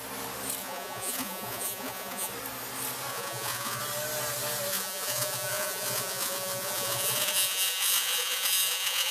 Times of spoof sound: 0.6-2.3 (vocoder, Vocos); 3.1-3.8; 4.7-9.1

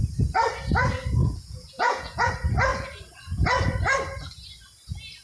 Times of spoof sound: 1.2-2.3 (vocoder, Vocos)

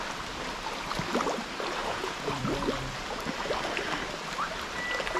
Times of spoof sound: 1.8-2.3 (vocoder, Vocos)